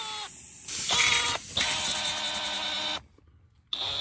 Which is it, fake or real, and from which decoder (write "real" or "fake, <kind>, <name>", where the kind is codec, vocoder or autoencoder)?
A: real